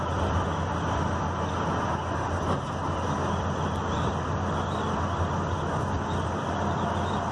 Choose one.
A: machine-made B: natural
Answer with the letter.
B